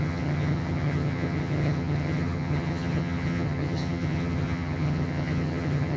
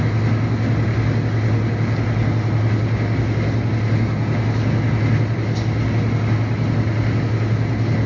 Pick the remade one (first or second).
first